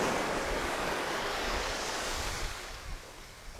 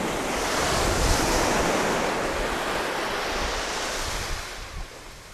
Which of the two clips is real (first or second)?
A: second